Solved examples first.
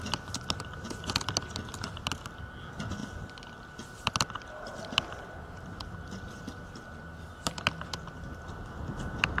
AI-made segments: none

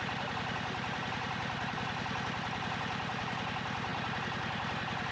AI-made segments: 0.0-5.1

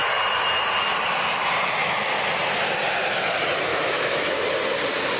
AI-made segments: 1.8-2.3; 3.7-4.4

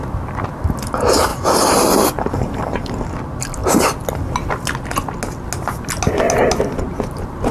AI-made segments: 1.3-2.6

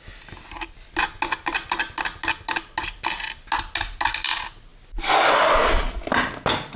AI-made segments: none

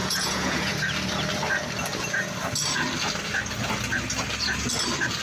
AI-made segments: 0.0-0.7

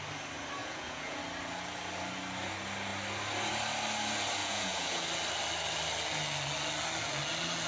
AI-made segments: 0.6-1.2; 4.4-5.0

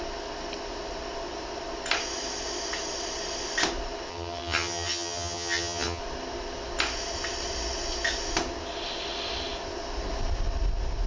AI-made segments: 4.1-6.0